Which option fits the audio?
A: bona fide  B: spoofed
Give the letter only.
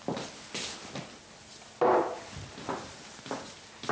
A